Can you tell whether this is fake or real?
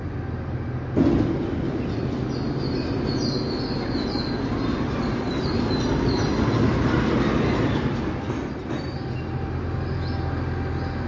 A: real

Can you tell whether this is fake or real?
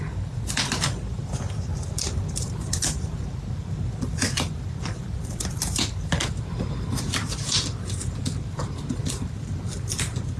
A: fake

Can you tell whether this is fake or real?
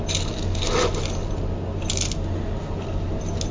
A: real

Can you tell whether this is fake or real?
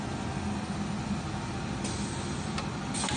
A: real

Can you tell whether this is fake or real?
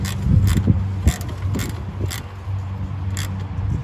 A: real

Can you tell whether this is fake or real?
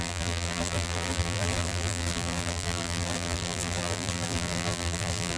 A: fake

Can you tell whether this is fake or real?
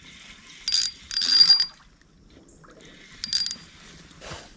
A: real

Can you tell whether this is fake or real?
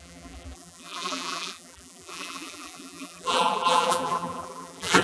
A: fake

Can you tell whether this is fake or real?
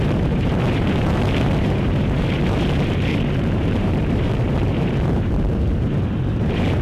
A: fake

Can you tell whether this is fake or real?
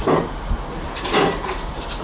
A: real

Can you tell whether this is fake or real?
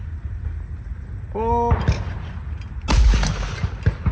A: real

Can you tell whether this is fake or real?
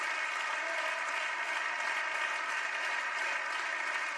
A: real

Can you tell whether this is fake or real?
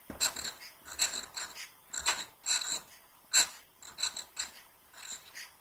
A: real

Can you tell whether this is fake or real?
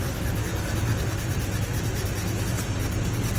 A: real